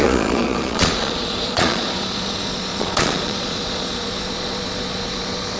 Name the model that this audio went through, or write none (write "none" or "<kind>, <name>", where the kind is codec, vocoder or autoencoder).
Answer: vocoder, Vocos